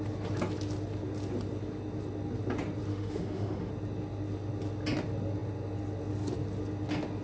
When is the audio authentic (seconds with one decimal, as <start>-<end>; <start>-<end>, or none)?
0.0-2.9; 3.7-7.2

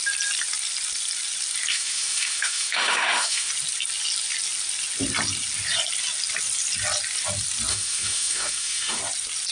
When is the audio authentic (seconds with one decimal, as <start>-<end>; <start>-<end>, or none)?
0.0-1.7; 3.5-7.7; 9.0-9.5